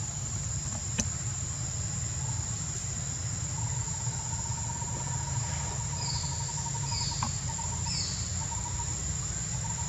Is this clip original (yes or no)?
yes